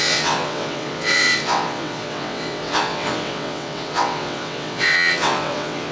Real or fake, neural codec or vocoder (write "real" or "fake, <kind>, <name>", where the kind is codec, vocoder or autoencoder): fake, vocoder, WaveNeXt